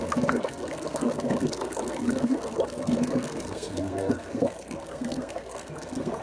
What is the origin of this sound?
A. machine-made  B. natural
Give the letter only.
A